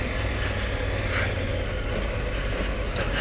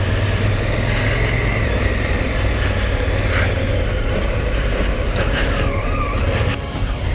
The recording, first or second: first